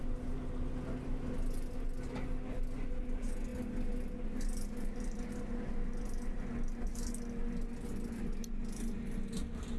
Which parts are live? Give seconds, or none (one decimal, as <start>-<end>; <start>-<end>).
0.0-9.8